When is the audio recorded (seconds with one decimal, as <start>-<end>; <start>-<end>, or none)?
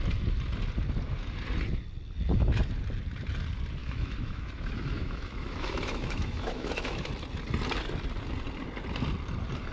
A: 0.0-3.8; 7.1-9.7